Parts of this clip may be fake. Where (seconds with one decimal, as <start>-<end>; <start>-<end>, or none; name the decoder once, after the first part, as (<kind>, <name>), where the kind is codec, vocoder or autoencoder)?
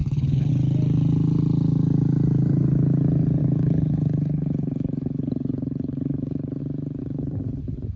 0.0-0.5 (codec, HILCodec); 3.4-6.6; 7.0-7.6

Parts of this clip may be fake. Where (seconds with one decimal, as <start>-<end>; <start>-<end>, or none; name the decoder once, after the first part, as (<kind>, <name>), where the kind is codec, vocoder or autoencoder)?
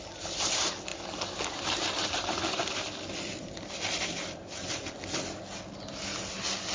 none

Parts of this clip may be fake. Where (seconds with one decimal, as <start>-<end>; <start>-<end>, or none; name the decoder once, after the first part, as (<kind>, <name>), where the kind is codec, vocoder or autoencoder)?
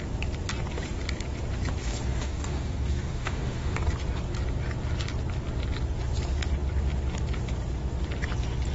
1.8-3.8 (codec, DAC)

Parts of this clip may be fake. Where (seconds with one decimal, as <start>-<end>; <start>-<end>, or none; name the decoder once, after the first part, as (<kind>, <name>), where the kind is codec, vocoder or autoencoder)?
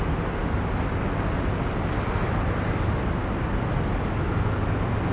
none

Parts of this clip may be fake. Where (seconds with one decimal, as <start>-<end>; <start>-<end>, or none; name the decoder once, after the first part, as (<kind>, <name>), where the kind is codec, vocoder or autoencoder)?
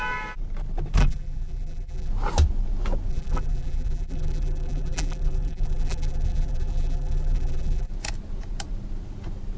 1.0-2.1 (vocoder, BigVGAN v2); 3.1-7.9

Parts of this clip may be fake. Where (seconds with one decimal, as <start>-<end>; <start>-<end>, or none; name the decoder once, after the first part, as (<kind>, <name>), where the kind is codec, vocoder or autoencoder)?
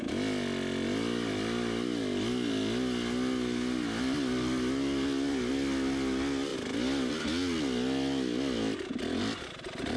none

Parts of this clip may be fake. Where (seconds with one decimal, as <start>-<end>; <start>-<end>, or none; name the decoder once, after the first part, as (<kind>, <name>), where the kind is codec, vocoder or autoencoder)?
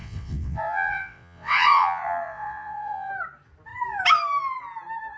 0.0-3.1 (vocoder, WaveNeXt)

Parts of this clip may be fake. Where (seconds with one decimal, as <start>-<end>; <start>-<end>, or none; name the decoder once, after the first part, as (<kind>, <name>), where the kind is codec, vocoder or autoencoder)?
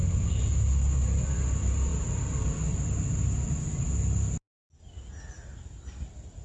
none